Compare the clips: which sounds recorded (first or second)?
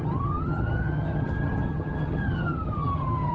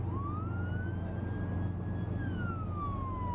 second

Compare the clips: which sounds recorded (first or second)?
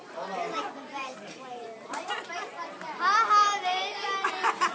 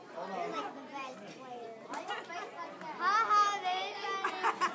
second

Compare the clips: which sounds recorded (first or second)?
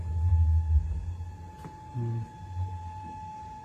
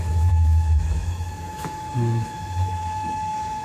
first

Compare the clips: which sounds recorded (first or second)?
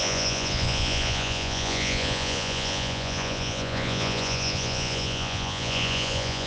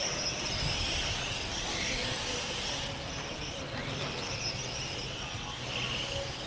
second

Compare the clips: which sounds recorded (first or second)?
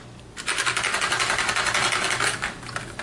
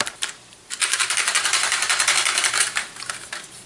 first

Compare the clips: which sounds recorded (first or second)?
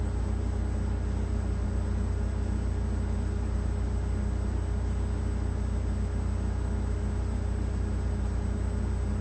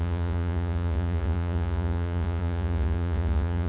first